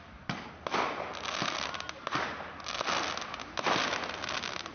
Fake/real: real